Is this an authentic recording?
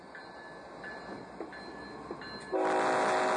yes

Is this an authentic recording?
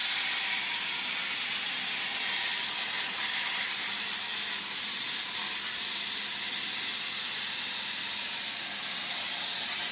yes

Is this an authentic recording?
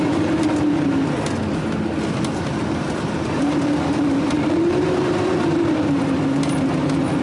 no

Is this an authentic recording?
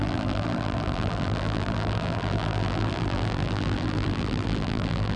no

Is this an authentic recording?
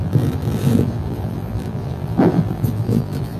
no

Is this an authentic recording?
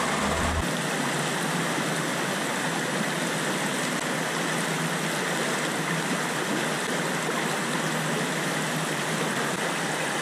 yes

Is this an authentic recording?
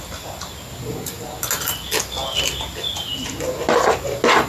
yes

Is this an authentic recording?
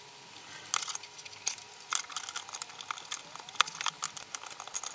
yes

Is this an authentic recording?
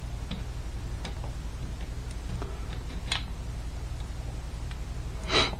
yes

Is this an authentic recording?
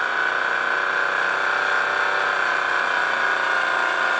yes